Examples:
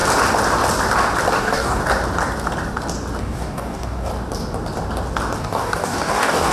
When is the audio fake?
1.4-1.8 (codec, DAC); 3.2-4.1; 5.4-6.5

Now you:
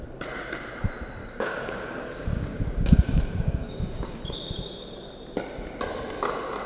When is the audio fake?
1.2-4.2 (codec, DAC)

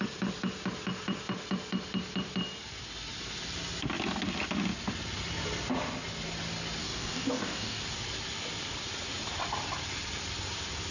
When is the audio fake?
6.8-7.8 (codec, DAC)

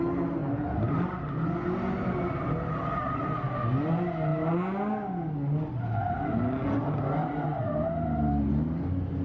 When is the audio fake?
none

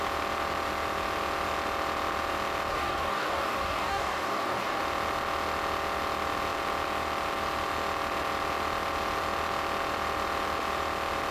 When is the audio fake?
2.7-4.8 (codec, DAC)

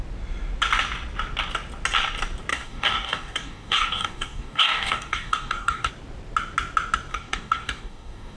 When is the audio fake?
2.5-5.9 (codec, DAC); 7.1-8.4

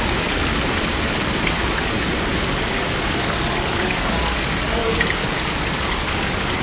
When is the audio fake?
0.0-0.5 (codec, DAC); 2.6-6.6

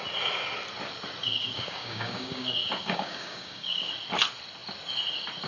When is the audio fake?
1.2-3.9 (codec, DAC)